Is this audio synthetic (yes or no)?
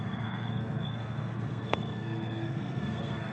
yes